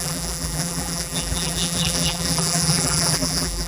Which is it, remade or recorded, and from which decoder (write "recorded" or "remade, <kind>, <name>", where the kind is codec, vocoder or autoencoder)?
remade, vocoder, BigVGAN v2